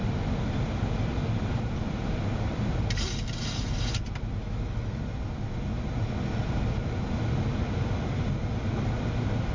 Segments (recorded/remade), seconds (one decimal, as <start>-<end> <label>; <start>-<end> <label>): 0.0-4.4 recorded; 4.4-5.0 remade; 5.0-9.5 recorded